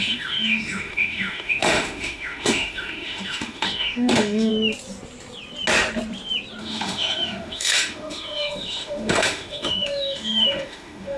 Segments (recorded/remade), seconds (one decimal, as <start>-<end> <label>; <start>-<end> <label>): 0.0-4.5 remade; 4.5-6.6 recorded; 6.6-11.2 remade